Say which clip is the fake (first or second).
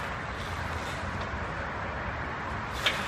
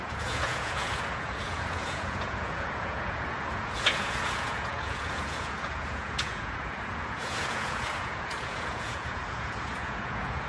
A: second